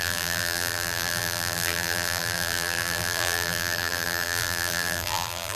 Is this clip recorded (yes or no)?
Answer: no